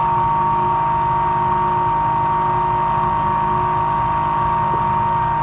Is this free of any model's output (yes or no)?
yes